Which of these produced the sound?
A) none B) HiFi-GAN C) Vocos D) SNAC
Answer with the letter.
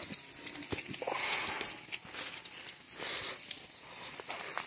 A